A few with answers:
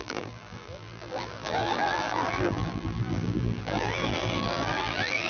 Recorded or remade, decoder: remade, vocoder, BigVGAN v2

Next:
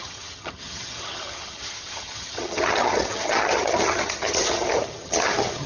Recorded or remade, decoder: remade, vocoder, HiFi-GAN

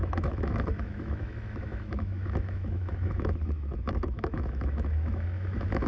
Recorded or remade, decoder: remade, autoencoder, DAC-VAE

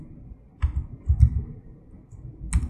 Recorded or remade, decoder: recorded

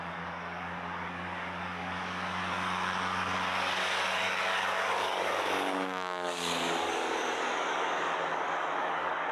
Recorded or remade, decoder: remade, codec, DAC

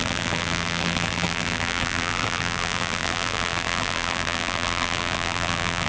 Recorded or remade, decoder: remade, vocoder, BigVGAN v2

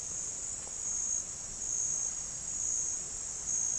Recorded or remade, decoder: recorded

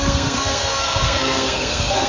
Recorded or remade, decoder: remade, codec, SNAC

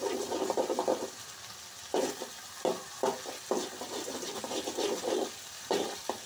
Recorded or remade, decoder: recorded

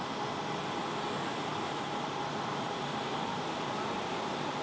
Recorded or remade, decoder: recorded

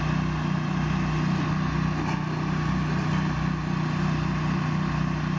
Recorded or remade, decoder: recorded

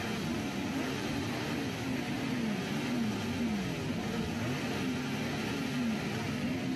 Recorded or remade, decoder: recorded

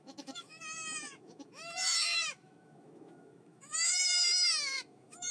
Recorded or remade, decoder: remade, autoencoder, DAC-VAE